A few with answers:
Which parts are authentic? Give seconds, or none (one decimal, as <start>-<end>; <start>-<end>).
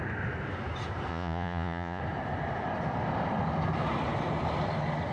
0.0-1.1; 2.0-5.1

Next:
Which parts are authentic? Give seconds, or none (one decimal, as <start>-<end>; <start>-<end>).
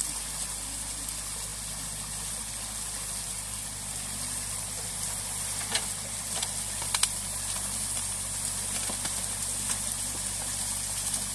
0.0-11.3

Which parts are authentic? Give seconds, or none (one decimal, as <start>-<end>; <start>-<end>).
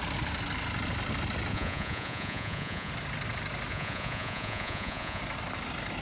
0.0-1.5; 2.9-3.7; 5.2-6.0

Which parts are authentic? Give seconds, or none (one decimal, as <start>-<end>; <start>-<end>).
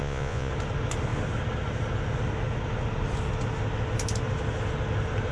0.5-5.3